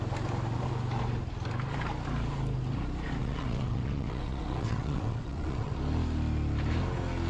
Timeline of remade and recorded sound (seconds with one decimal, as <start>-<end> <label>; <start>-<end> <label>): 0.0-3.2 recorded; 3.2-5.7 remade; 5.7-7.3 recorded